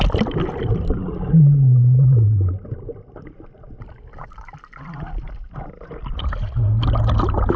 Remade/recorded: recorded